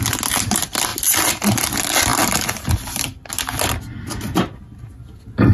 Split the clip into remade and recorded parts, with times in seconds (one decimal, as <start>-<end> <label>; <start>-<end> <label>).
0.0-5.5 recorded